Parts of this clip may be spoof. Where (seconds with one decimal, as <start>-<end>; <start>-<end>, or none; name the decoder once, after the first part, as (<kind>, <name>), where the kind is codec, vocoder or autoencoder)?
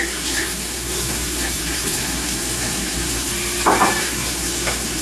0.0-3.3 (codec, SNAC); 4.0-5.0